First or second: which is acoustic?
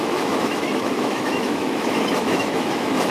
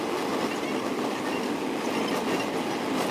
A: second